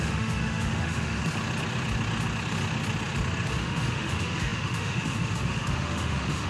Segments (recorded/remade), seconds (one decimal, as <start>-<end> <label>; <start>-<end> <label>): 0.0-1.2 remade; 1.2-3.6 recorded; 3.6-6.5 remade